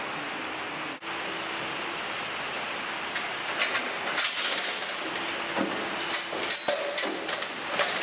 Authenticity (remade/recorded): recorded